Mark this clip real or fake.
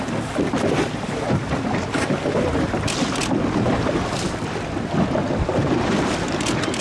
real